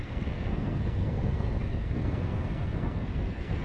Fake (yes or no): yes